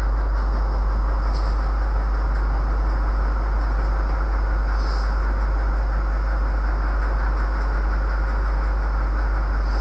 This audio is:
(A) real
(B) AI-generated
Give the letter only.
A